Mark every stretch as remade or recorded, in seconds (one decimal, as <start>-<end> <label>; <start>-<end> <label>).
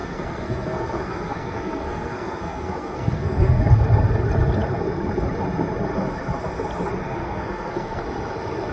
0.0-3.6 remade; 3.6-7.0 recorded; 7.0-8.0 remade; 8.0-8.7 recorded